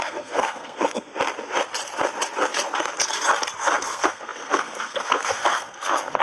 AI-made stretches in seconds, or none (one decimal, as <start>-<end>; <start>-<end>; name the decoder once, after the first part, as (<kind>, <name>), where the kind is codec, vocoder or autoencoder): 0.0-1.1 (codec, SNAC); 3.8-6.2

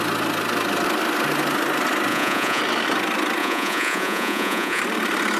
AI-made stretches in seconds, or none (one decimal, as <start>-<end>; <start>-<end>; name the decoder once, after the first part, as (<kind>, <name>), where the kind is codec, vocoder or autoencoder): 2.1-2.6 (vocoder, Vocos); 3.4-4.8

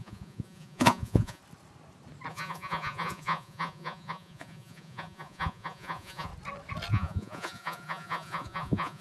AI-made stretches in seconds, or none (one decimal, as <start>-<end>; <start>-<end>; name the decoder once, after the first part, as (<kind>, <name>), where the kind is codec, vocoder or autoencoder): 0.0-1.4 (vocoder, Vocos); 2.3-6.3; 6.9-9.0

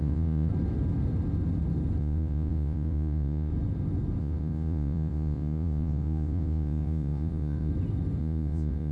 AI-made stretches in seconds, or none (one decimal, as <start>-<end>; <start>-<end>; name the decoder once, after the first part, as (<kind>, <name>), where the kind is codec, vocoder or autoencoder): 0.0-0.5 (vocoder, Vocos); 2.0-3.5; 4.2-7.7; 8.2-8.9

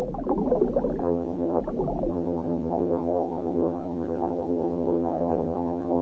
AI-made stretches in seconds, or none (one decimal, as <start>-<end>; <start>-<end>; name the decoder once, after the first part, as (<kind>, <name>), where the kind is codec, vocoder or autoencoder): 1.0-1.6 (vocoder, HiFi-GAN); 2.1-6.0

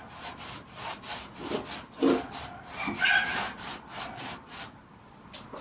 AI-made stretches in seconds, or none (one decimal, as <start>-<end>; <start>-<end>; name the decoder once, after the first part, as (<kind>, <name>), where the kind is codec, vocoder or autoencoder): 0.0-0.8 (vocoder, BigVGAN v2)

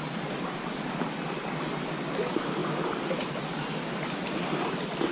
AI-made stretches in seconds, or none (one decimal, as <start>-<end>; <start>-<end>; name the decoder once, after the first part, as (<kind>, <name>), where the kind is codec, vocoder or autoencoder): 2.6-3.3 (vocoder, BigVGAN v2)

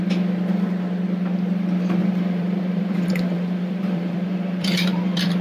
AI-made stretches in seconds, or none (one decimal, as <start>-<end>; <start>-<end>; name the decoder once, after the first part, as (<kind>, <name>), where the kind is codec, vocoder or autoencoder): 2.0-5.4 (vocoder, BigVGAN v2)